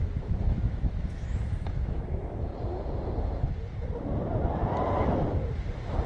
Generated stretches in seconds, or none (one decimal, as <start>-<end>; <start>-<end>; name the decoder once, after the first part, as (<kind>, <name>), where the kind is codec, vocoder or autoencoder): 0.0-2.5 (autoencoder, DAC-VAE)